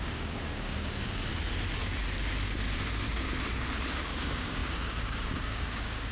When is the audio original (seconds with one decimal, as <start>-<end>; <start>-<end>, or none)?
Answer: 1.3-3.9